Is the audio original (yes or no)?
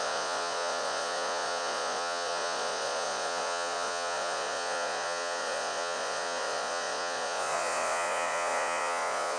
no